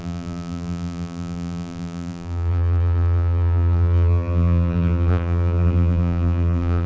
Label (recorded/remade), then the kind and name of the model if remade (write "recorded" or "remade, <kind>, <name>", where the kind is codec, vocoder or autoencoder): remade, vocoder, BigVGAN v2